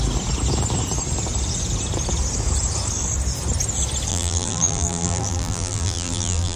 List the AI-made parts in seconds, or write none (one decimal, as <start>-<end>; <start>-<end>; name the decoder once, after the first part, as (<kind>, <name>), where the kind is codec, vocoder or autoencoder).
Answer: 4.1-6.6 (vocoder, BigVGAN v2)